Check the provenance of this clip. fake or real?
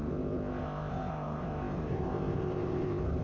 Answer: fake